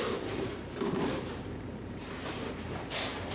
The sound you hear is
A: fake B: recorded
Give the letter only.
A